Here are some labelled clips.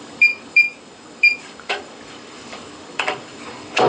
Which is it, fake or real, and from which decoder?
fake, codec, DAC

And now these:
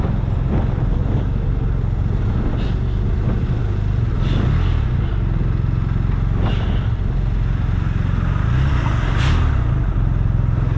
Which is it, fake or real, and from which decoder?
real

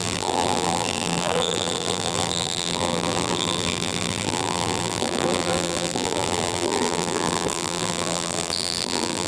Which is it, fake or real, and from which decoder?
fake, vocoder, BigVGAN v2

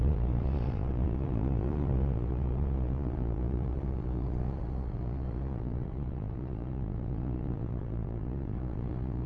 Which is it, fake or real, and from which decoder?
fake, vocoder, Vocos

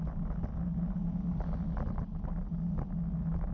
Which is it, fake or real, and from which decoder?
real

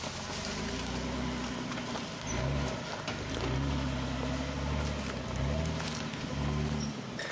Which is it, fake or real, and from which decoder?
real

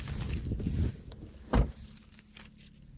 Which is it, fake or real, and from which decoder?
real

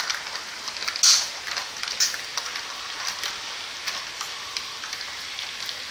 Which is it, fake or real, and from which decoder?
real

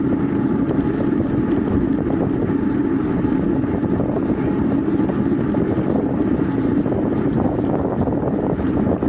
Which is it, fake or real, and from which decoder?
real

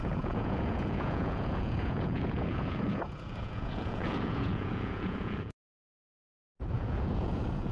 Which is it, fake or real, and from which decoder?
fake, vocoder, Vocos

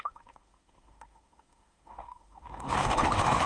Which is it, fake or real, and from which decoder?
fake, autoencoder, DAC-VAE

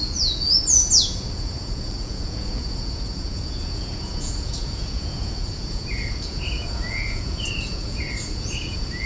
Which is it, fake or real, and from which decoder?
fake, vocoder, Vocos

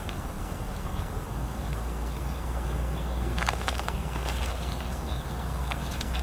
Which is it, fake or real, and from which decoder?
fake, codec, SNAC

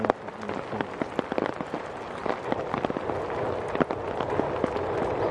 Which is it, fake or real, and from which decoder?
real